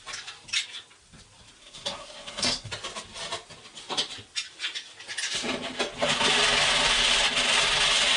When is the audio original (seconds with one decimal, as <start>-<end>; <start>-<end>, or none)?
0.0-1.6; 2.7-8.2